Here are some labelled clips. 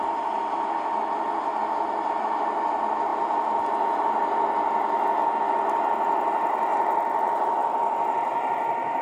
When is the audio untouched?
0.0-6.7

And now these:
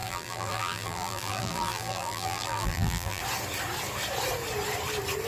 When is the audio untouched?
3.2-5.3

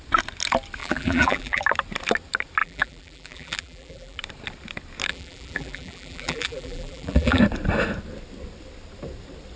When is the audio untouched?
0.0-0.8; 1.6-2.6; 4.2-5.1; 7.4-9.6

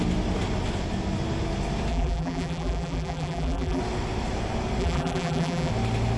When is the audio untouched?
0.0-1.9; 3.8-4.8; 5.7-6.2

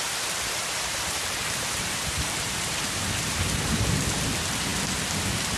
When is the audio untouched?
0.0-0.6; 4.0-5.6